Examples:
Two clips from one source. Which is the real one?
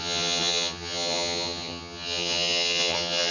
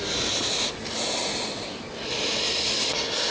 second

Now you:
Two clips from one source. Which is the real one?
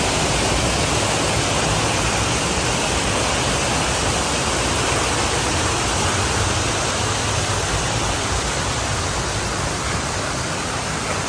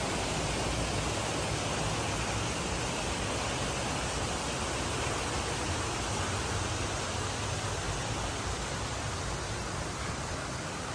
second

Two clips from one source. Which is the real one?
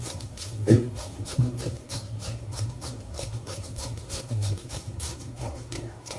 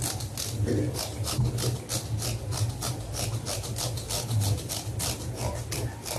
second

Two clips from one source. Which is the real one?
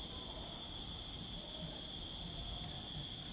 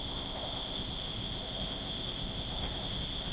first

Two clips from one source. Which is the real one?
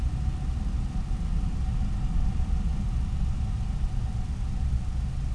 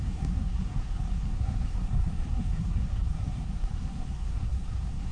first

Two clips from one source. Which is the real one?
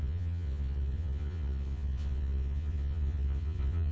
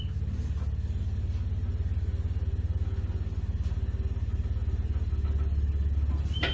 second